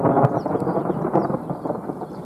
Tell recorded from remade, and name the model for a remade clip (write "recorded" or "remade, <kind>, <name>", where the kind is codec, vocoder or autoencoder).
recorded